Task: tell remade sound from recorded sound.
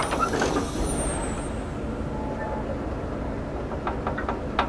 recorded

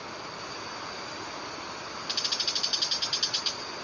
recorded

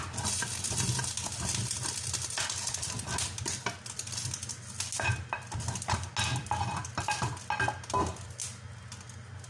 recorded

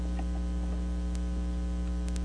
recorded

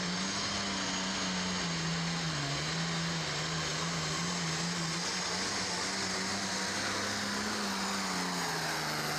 recorded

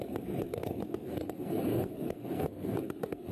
remade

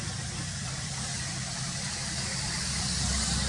recorded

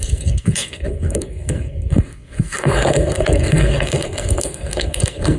remade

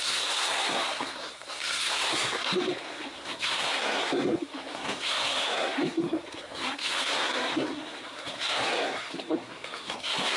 remade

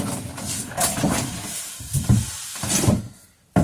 recorded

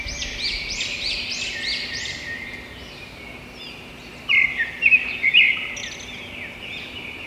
recorded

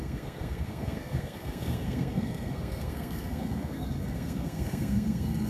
remade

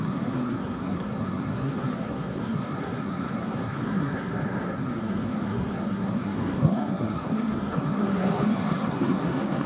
remade